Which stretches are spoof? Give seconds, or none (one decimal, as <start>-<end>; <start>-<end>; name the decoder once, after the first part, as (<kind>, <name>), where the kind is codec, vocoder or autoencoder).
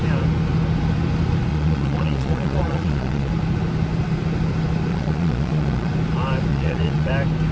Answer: 1.5-3.3 (vocoder, Vocos); 4.9-5.9; 6.5-7.1